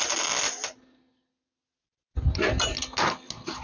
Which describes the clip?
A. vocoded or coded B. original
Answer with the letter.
B